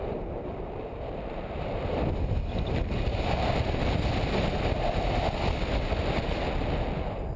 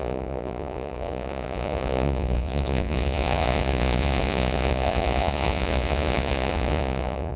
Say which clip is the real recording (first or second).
first